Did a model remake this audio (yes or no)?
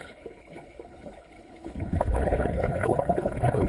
yes